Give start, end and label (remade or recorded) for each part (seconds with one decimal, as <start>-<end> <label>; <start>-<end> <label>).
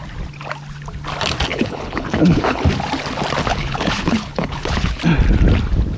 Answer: 0.0-1.5 recorded; 1.5-2.6 remade; 2.6-3.5 recorded; 3.5-5.0 remade; 5.0-6.0 recorded